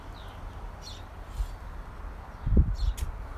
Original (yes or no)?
yes